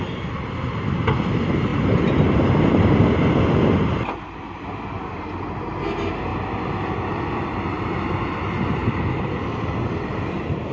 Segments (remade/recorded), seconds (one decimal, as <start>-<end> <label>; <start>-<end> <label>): 0.0-1.7 recorded; 1.7-3.1 remade; 3.1-10.7 recorded